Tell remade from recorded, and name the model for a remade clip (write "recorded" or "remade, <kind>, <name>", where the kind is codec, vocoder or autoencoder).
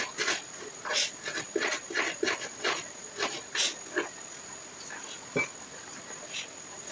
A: recorded